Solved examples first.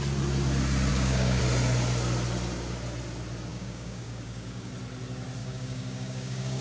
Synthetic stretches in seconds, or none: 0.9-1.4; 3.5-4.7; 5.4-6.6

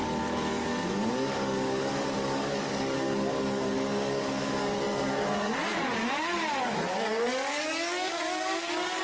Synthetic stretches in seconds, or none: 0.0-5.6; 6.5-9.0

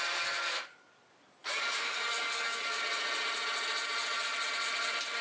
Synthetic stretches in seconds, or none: 1.4-2.8

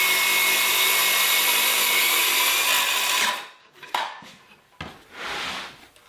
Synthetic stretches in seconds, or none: 1.7-2.3; 3.6-4.3

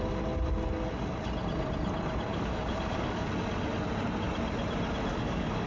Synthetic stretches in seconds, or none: 2.3-3.3; 5.1-5.7

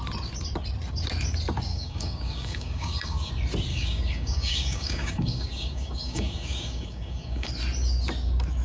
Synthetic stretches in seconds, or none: 1.7-3.3; 3.7-7.5

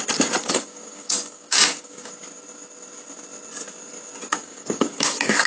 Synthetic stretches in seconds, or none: 0.4-2.1; 4.3-5.5

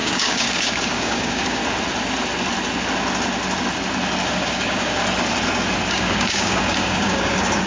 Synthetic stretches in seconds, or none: 0.0-1.6; 4.3-5.0; 5.9-7.7